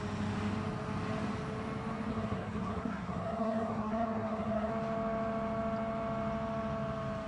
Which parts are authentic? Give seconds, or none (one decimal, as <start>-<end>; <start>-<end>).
0.0-2.1; 4.7-7.3